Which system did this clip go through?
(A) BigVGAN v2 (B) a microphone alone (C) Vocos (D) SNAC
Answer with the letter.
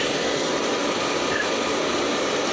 B